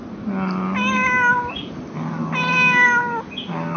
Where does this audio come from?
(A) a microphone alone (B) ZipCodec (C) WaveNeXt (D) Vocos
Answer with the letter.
A